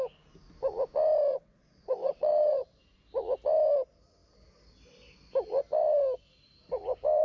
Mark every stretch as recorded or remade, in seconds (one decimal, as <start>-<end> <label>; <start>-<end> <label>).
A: 0.0-1.3 recorded; 1.3-2.8 remade; 2.8-7.2 recorded